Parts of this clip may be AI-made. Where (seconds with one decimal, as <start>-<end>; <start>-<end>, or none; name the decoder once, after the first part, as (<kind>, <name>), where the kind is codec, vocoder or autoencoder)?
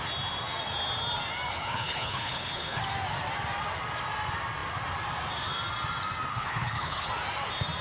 1.5-2.8 (codec, HILCodec); 6.3-7.1